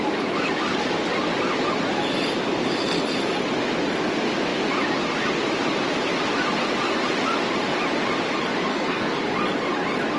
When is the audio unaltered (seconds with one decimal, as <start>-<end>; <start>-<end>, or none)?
0.0-8.7; 9.2-10.2